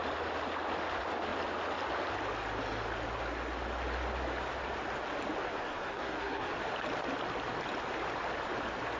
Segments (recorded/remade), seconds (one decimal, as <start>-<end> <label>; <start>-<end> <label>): 0.0-5.5 recorded; 5.5-6.5 remade; 6.5-9.0 recorded